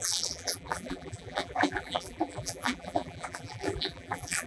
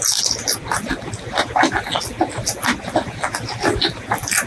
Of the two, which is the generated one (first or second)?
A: first